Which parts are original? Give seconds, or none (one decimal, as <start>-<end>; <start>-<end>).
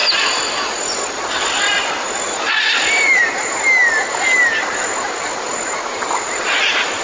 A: 0.0-0.5; 3.2-5.9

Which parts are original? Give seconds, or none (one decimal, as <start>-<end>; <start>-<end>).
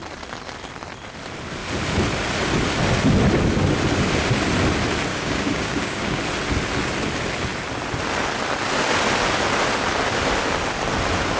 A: 0.0-5.1; 6.2-11.4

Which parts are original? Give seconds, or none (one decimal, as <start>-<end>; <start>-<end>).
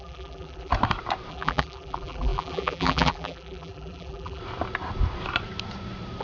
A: 0.7-1.3; 4.4-6.2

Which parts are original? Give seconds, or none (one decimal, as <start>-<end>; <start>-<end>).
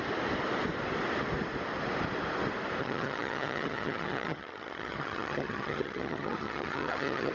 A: 0.0-2.8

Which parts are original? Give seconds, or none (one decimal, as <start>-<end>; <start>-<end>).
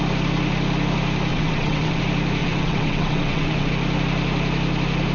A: 0.0-1.3; 2.0-2.4; 3.7-5.1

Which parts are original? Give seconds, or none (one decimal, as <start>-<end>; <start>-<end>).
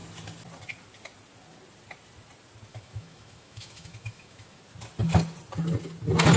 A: 0.0-2.7; 4.6-6.4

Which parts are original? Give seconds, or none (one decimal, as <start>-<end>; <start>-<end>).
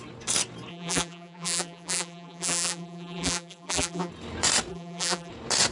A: 0.0-0.7; 4.1-4.7; 5.3-5.7